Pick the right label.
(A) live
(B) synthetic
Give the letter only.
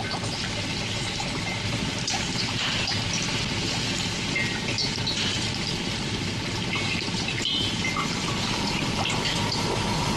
A